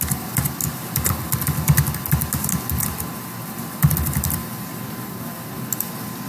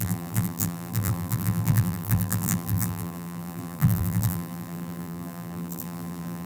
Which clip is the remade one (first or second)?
second